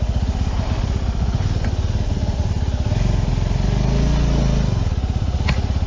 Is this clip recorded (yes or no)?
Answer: yes